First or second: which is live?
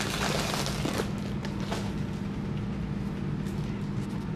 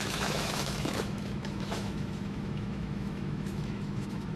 first